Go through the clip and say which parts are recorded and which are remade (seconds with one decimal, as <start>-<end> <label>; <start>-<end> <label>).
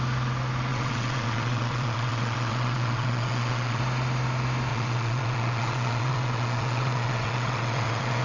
0.0-0.7 recorded; 0.7-3.8 remade; 3.8-4.7 recorded; 4.7-8.2 remade